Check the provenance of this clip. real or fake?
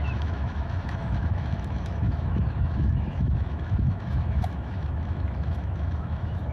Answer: fake